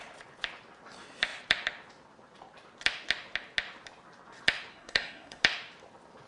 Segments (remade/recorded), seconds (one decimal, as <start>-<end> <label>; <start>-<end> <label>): 0.0-4.7 recorded; 4.7-5.4 remade; 5.4-6.3 recorded